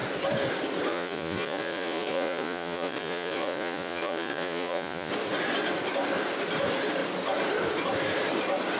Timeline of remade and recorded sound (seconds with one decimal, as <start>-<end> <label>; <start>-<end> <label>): 0.0-0.9 recorded; 0.9-5.1 remade; 5.1-8.8 recorded